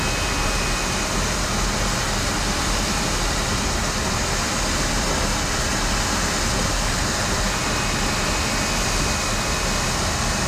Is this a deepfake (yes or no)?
no